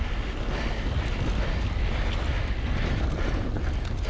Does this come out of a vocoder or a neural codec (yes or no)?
no